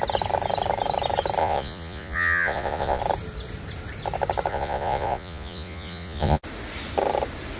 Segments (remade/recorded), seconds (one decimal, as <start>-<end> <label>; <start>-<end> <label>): 0.0-1.4 recorded; 1.4-3.0 remade; 3.0-4.5 recorded; 4.5-6.4 remade; 6.4-7.6 recorded